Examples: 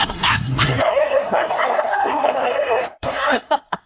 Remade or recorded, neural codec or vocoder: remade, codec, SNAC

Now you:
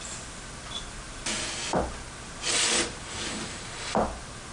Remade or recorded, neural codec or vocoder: recorded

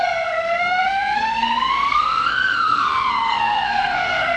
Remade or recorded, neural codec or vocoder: remade, codec, SNAC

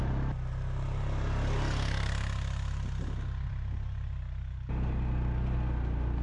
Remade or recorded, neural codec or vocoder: recorded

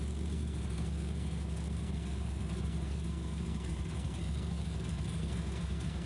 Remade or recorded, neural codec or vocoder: remade, codec, SNAC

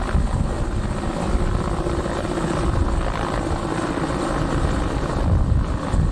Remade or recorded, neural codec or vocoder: recorded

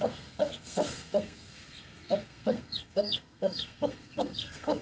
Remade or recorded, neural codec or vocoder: remade, codec, SNAC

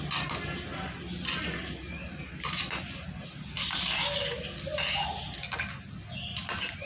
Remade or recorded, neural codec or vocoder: recorded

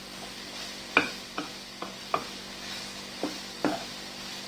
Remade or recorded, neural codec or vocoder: recorded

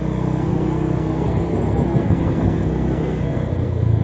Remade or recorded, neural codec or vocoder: remade, codec, SNAC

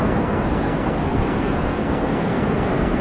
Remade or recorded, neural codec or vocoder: remade, codec, SNAC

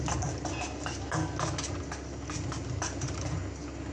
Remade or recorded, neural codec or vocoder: recorded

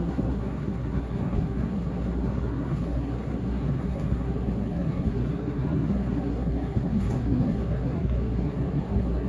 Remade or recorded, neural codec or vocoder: remade, codec, SNAC